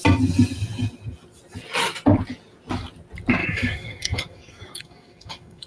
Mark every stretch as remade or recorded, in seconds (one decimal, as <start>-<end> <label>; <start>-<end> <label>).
0.0-3.4 recorded; 3.4-5.7 remade